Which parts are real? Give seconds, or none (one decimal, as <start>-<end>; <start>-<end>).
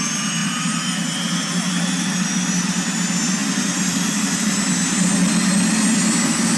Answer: 0.0-3.4; 5.1-6.6